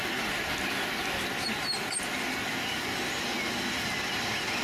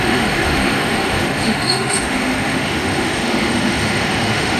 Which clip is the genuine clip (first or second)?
first